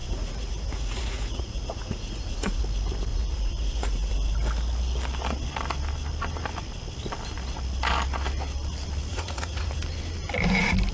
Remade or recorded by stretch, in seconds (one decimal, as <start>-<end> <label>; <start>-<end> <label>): 0.0-2.6 remade; 2.6-3.1 recorded; 3.1-4.1 remade; 4.1-9.1 recorded; 9.1-9.7 remade; 9.7-10.9 recorded